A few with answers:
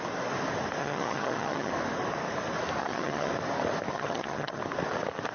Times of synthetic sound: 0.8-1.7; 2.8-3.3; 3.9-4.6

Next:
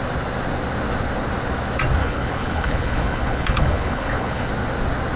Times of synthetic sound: 2.0-4.5

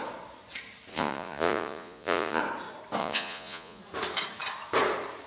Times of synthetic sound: 0.9-2.4; 3.0-3.8

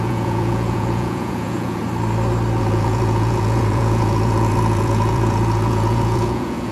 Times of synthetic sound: 0.0-1.8; 2.6-6.7

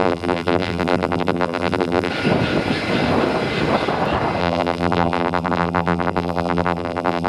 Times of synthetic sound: 0.0-2.1; 4.4-7.3

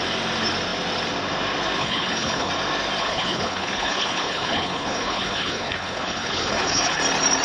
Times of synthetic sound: 1.8-2.5; 3.0-7.0